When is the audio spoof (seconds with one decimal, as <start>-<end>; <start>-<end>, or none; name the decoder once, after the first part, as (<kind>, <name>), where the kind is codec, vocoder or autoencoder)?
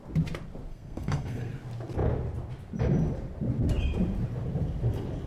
0.7-1.5 (codec, SNAC)